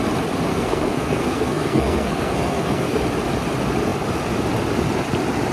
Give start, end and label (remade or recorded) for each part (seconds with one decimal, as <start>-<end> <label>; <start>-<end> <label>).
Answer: 0.0-0.5 recorded; 0.5-3.0 remade; 3.0-5.5 recorded

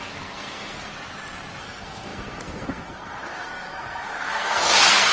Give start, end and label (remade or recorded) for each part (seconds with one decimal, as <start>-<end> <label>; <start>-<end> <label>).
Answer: 0.0-0.9 remade; 0.9-1.6 recorded; 1.6-5.1 remade

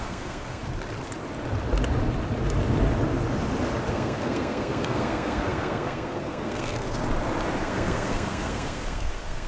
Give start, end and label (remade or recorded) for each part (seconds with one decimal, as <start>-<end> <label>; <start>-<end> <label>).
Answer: 0.0-0.6 remade; 0.6-3.9 recorded; 3.9-7.0 remade; 7.0-7.6 recorded; 7.6-9.5 remade